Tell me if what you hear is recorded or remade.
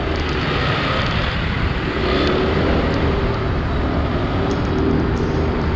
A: recorded